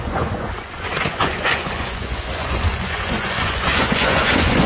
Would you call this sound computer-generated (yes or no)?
yes